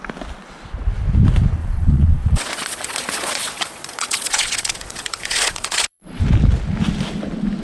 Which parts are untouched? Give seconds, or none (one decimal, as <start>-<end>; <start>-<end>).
0.0-1.6; 6.2-7.6